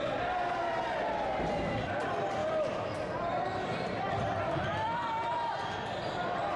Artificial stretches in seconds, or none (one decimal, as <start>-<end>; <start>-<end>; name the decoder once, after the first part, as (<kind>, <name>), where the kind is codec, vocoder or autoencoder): 2.4-6.6 (vocoder, BigVGAN v2)